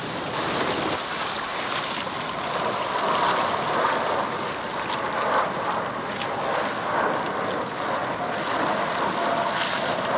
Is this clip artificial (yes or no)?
no